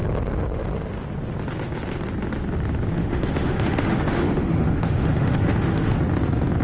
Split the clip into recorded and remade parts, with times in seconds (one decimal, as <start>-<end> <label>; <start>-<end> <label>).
0.0-3.0 recorded; 3.0-6.0 remade; 6.0-6.6 recorded